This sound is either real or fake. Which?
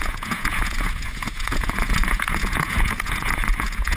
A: fake